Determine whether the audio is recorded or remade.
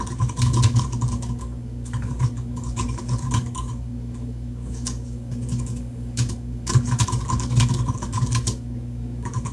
remade